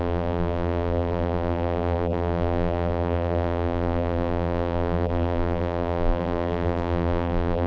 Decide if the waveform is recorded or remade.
remade